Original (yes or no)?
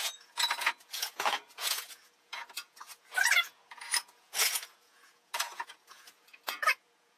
no